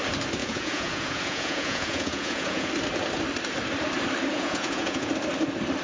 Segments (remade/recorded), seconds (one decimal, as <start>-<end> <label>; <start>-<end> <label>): 0.0-0.4 recorded; 0.4-2.7 remade; 2.7-4.3 recorded; 4.3-5.1 remade; 5.1-5.8 recorded